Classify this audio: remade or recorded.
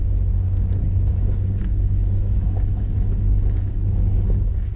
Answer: remade